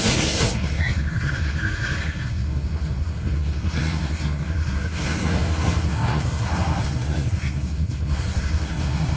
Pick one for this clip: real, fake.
fake